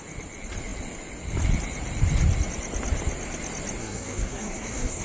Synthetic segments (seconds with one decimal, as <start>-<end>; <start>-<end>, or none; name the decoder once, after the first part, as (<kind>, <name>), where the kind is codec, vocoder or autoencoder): 3.8-5.0 (codec, SNAC)